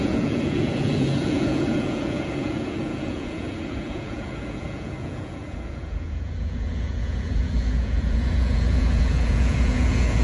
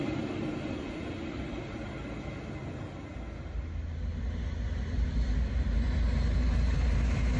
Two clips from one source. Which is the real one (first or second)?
second